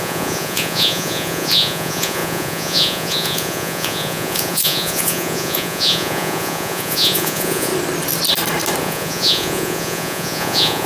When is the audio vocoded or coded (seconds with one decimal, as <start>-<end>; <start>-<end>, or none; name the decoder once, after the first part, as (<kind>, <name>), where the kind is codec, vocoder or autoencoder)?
0.0-7.7 (vocoder, Vocos); 8.8-10.9